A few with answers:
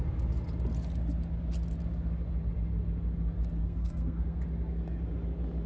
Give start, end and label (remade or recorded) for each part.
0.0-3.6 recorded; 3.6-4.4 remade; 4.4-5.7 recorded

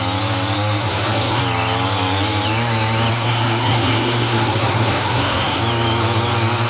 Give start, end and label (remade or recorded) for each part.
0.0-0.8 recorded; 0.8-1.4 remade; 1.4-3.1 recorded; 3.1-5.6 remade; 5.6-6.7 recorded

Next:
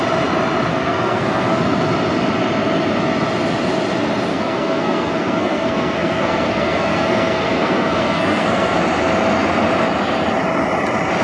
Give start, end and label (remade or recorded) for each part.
0.0-0.7 recorded; 0.7-1.6 remade; 1.6-4.3 recorded; 4.3-8.8 remade; 8.8-11.2 recorded

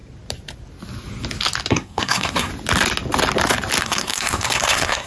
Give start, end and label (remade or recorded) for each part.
0.0-1.7 recorded; 1.7-2.5 remade; 2.5-3.8 recorded; 3.8-5.1 remade

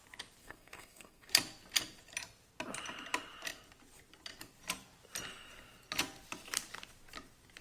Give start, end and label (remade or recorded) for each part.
0.0-0.4 recorded; 0.4-1.3 remade; 1.3-7.6 recorded

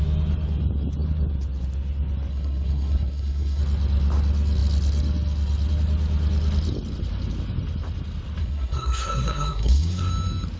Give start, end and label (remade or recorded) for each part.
0.0-2.3 recorded; 2.3-3.6 remade; 3.6-8.4 recorded; 8.4-10.1 remade; 10.1-10.6 recorded